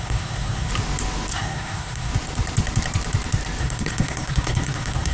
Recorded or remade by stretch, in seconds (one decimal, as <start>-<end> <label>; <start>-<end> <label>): 0.0-0.7 remade; 0.7-1.3 recorded; 1.3-2.1 remade; 2.1-3.6 recorded; 3.6-5.1 remade